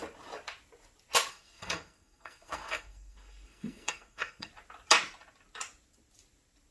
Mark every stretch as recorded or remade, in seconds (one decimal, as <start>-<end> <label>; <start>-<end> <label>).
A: 0.0-1.3 recorded; 1.3-4.5 remade; 4.5-6.7 recorded